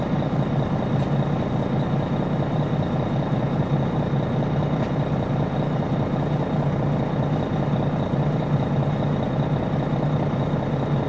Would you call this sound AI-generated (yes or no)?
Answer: no